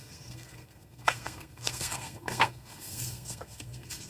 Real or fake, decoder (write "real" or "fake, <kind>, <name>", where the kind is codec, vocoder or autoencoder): fake, codec, SNAC